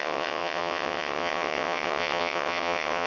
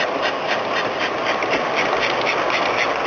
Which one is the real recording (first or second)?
second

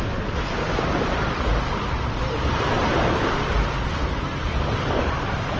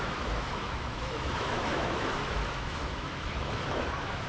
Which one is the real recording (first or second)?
first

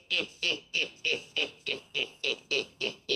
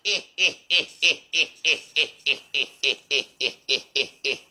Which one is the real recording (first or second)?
second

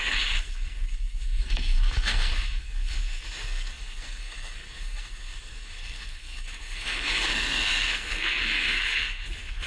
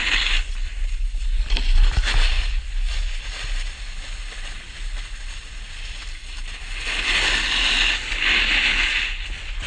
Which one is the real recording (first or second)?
second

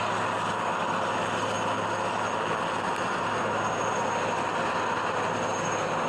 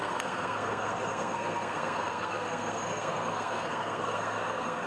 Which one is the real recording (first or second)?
first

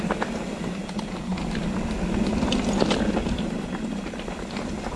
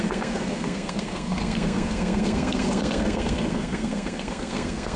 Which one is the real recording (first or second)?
first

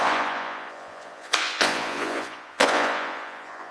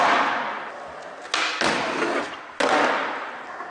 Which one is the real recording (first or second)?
second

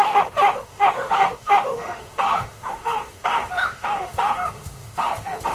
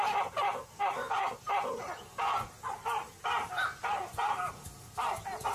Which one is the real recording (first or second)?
second